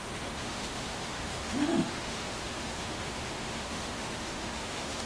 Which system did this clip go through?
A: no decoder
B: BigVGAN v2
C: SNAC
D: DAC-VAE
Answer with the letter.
D